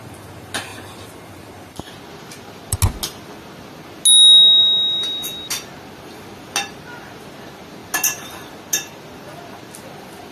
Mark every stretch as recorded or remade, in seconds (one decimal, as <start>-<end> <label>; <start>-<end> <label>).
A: 0.0-10.3 recorded